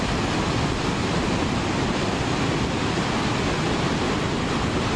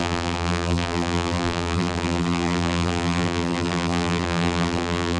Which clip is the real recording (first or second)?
first